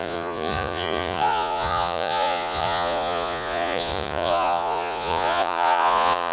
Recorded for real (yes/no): no